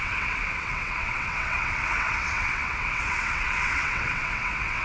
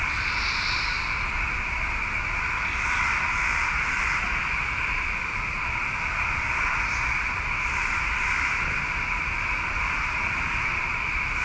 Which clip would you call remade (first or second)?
first